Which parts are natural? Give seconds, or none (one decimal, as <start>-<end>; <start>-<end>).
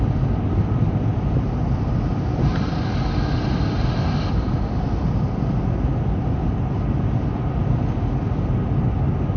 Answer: 0.0-9.4